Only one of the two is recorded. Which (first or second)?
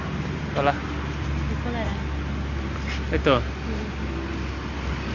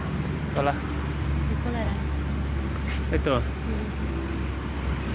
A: first